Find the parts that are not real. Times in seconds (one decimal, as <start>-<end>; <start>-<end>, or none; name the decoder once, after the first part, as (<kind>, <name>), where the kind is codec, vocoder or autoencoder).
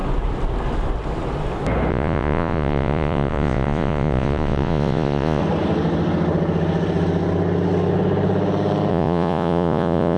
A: 1.9-5.4 (vocoder, Vocos); 8.9-10.2